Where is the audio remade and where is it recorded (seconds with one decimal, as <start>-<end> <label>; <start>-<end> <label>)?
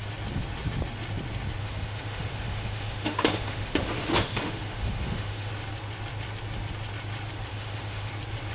0.0-1.6 recorded; 1.6-5.5 remade; 5.5-7.5 recorded; 7.5-8.1 remade; 8.1-8.5 recorded